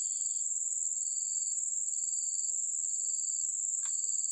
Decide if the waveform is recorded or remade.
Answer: recorded